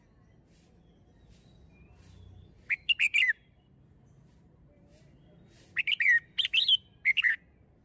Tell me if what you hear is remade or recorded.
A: recorded